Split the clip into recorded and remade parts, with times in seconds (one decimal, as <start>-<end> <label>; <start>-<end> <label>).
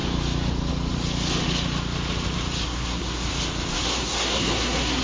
0.0-2.6 recorded; 2.6-3.3 remade; 3.3-3.7 recorded; 3.7-5.0 remade